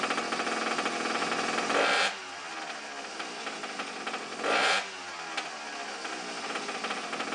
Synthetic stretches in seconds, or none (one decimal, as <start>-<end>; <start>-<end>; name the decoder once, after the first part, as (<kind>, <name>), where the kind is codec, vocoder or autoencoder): none